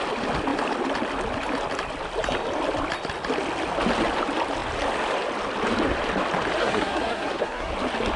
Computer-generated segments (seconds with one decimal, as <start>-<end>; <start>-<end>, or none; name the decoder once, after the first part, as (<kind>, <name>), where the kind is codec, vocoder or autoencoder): 6.6-7.7 (codec, SNAC)